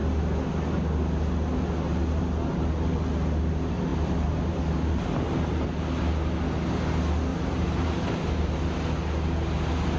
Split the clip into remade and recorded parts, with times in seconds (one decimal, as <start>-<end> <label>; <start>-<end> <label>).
0.0-3.9 recorded; 3.9-4.6 remade; 4.6-7.3 recorded; 7.3-8.6 remade; 8.6-10.0 recorded